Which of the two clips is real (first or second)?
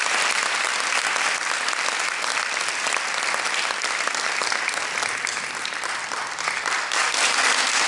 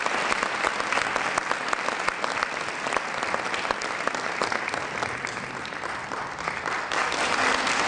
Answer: second